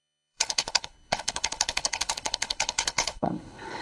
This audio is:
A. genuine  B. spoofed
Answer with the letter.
B